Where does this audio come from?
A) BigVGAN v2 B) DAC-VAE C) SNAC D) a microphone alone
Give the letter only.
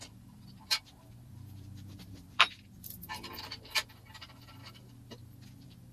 A